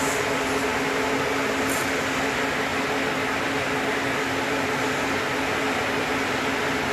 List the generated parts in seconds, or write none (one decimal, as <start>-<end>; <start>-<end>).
none